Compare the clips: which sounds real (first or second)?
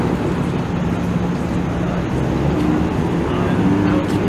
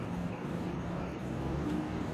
first